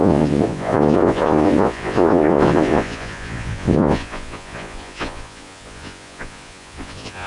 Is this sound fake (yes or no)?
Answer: yes